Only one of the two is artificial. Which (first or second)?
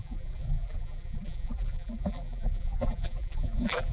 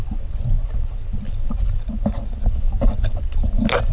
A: first